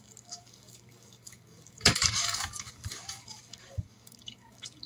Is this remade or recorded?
remade